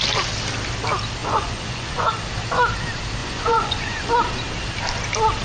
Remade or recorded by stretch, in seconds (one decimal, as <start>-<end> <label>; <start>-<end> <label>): 0.0-1.2 recorded; 1.2-2.1 remade; 2.1-3.2 recorded; 3.2-4.1 remade; 4.1-5.4 recorded